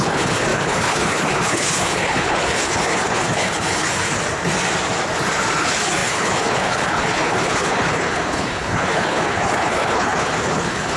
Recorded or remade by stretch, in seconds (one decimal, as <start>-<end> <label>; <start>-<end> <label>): 0.0-4.2 remade; 4.2-5.6 recorded; 5.6-11.0 remade